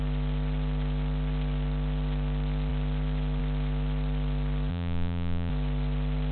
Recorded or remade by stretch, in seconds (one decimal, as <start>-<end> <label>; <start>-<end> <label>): 0.0-4.7 recorded; 4.7-5.5 remade; 5.5-6.3 recorded